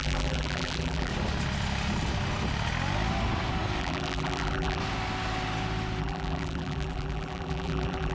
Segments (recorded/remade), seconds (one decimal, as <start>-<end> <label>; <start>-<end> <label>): 0.0-1.1 remade; 1.1-3.8 recorded; 3.8-4.8 remade; 4.8-6.0 recorded; 6.0-8.1 remade